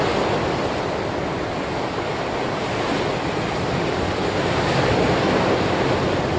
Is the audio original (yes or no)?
yes